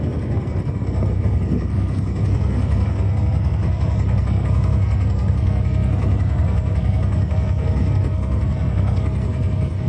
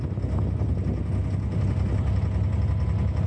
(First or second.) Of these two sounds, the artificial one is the first